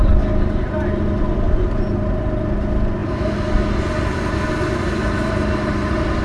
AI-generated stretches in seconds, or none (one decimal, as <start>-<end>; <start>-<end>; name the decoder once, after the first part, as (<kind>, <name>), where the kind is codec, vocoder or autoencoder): none